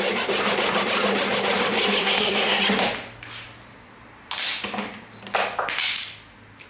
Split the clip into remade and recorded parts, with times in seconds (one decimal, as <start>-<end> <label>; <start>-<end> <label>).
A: 0.0-2.0 recorded; 2.0-2.6 remade; 2.6-6.7 recorded